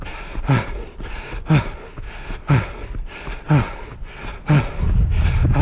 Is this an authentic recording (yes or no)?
yes